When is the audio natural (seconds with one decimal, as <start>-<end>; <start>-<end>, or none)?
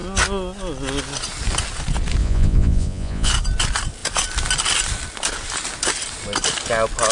0.0-2.2; 3.3-7.1